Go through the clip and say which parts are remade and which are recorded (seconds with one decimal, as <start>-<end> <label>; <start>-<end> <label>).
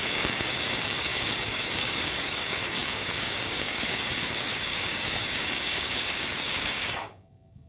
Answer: 0.0-7.7 remade